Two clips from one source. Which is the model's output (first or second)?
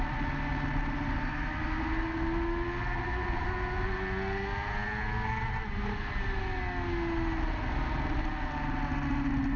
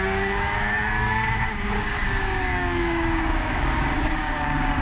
second